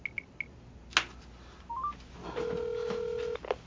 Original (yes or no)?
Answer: yes